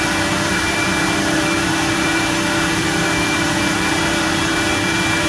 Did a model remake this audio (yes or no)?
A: yes